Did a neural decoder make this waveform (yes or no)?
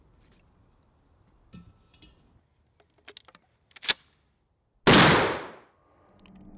no